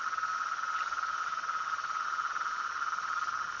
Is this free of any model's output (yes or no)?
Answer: yes